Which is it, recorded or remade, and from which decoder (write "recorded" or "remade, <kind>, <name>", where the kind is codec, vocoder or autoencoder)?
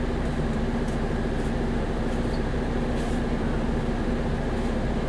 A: recorded